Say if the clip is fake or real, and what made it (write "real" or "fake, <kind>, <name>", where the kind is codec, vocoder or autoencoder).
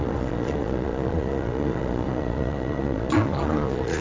fake, vocoder, Vocos